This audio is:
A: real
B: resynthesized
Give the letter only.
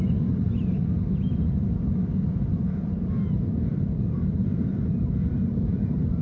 A